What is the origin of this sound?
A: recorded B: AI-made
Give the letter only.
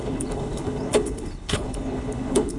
B